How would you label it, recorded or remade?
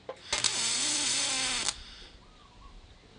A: recorded